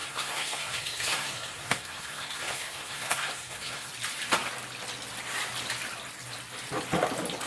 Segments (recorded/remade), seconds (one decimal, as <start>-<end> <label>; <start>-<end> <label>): 0.0-3.9 remade; 3.9-7.5 recorded